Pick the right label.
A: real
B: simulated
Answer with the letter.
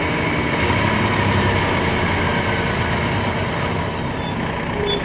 A